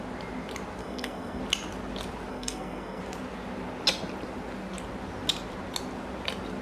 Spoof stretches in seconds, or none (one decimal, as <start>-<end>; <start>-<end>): 0.8-1.4; 2.3-3.0